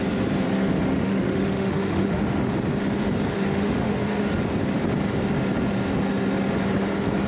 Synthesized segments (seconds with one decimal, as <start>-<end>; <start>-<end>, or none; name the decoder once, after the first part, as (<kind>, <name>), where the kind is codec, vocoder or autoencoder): 0.9-2.5 (autoencoder, DAC-VAE); 3.3-4.0